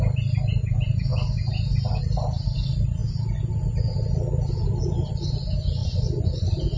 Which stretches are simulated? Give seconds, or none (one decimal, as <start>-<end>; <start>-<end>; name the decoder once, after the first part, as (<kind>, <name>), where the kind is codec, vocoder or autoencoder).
5.8-6.8 (vocoder, Vocos)